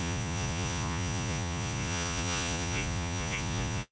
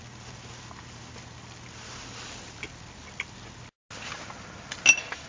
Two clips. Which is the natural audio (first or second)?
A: second